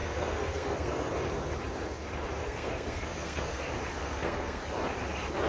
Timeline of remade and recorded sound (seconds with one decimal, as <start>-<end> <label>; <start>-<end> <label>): 0.0-1.1 remade; 1.1-2.4 recorded; 2.4-3.6 remade; 3.6-4.0 recorded; 4.0-4.6 remade; 4.6-5.5 recorded

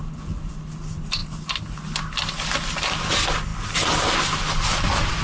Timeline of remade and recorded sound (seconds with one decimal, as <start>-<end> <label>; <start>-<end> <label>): 0.0-5.2 recorded

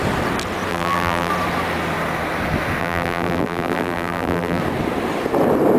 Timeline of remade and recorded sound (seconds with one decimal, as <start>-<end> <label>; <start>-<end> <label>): 0.0-0.7 recorded; 0.7-1.3 remade; 1.3-2.8 recorded; 2.8-4.6 remade; 4.6-5.8 recorded

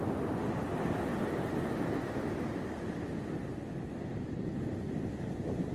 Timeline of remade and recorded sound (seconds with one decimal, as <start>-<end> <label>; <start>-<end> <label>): 0.0-5.7 recorded

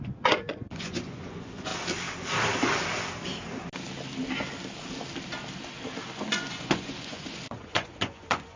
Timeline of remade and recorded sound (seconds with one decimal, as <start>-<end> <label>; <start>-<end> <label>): 0.0-1.7 remade; 1.7-6.1 recorded; 6.1-8.6 remade